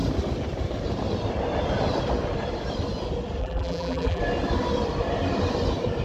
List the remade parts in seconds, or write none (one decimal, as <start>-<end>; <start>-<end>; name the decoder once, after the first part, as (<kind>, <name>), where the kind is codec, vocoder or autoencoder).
3.4-4.2 (vocoder, BigVGAN v2)